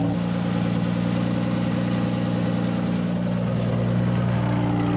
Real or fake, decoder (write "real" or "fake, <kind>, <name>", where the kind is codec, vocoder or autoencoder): real